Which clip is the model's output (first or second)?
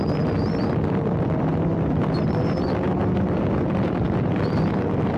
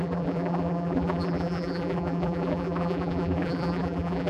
second